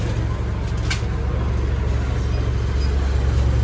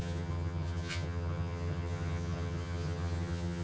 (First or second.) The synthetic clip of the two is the second